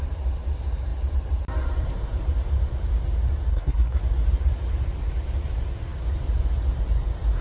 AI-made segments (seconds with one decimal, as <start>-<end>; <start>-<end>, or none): 3.5-4.0